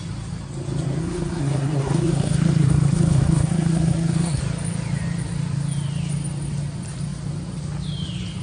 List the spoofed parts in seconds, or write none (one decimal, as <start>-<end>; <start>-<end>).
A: 1.0-4.4